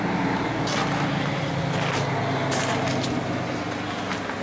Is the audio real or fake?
real